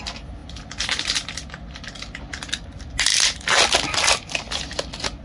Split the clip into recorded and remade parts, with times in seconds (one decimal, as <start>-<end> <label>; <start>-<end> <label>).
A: 0.0-5.2 recorded